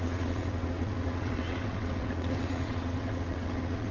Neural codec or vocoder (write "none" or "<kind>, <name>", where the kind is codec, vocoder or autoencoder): vocoder, WaveNeXt